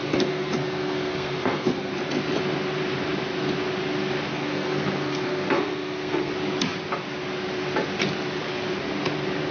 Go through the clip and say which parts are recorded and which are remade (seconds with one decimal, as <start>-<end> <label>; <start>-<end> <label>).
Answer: 0.0-1.9 remade; 1.9-4.3 recorded; 4.3-6.3 remade; 6.3-9.5 recorded